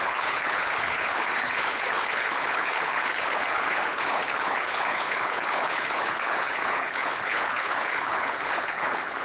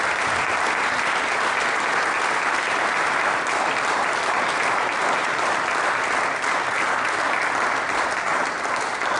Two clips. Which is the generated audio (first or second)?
first